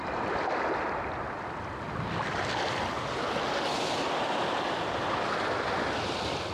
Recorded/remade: recorded